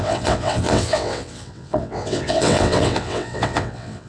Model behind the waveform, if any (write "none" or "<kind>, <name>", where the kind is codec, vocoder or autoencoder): vocoder, WaveNeXt